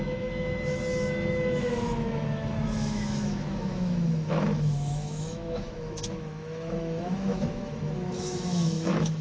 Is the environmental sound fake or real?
fake